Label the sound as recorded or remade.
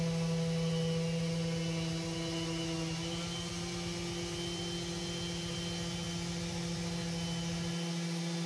recorded